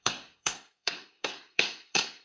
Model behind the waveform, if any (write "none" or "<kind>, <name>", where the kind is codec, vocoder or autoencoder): codec, SNAC